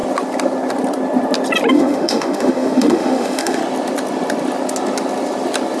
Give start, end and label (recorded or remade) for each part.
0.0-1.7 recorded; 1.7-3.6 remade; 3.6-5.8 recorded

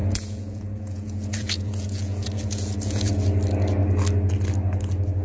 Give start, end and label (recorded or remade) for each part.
0.0-3.1 remade; 3.1-5.2 recorded

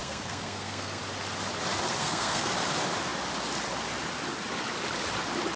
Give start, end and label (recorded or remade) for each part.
0.0-1.0 remade; 1.0-1.9 recorded; 1.9-2.5 remade; 2.5-5.6 recorded